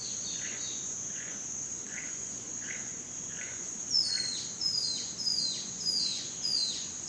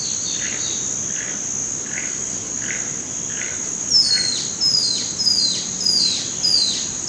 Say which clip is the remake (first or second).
first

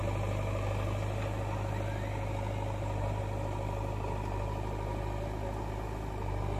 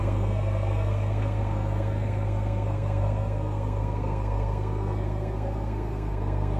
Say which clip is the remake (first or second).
second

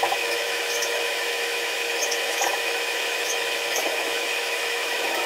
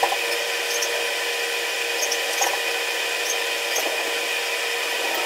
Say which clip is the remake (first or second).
first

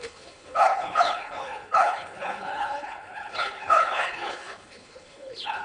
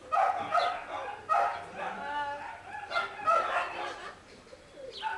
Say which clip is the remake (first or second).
first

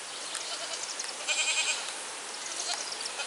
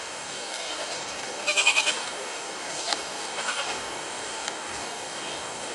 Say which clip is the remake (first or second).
second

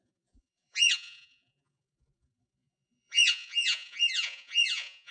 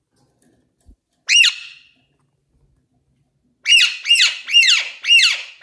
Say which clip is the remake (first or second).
first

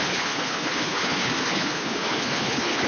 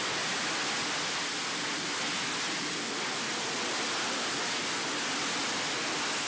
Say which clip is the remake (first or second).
first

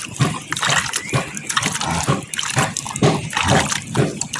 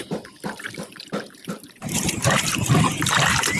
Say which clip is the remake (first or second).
second